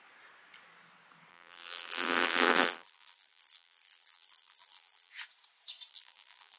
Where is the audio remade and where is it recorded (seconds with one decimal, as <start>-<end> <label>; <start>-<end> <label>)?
0.0-1.3 recorded; 1.3-5.1 remade; 5.1-5.9 recorded; 5.9-6.6 remade